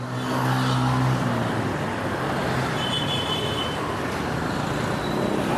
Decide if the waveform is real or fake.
real